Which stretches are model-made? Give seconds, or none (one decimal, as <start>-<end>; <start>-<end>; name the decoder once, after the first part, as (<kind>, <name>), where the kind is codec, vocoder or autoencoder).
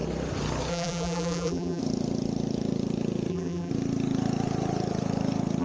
0.7-1.8 (vocoder, BigVGAN v2); 3.3-3.7